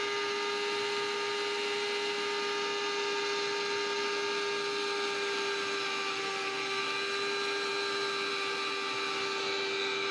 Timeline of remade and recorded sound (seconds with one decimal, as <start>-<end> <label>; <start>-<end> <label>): 0.0-6.2 recorded; 6.2-6.8 remade; 6.8-10.1 recorded